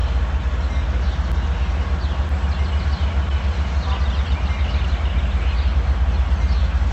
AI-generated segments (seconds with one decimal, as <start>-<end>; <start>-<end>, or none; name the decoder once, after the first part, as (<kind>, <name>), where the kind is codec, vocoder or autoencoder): none